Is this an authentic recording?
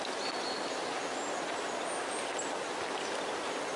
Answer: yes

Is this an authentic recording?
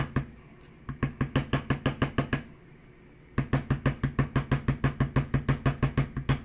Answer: yes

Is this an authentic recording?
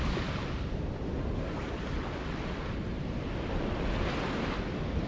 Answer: yes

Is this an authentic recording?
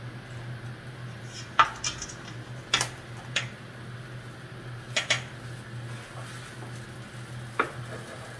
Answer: yes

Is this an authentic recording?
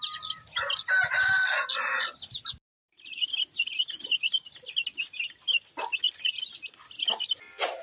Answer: yes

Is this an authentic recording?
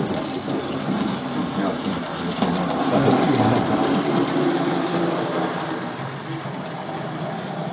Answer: yes